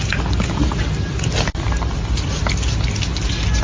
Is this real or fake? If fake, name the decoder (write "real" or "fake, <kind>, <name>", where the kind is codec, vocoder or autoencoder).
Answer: real